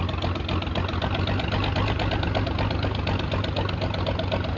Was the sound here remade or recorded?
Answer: recorded